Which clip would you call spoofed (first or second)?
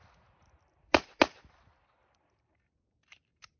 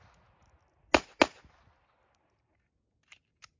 first